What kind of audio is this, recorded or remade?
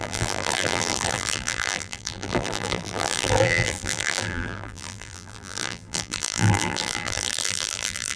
remade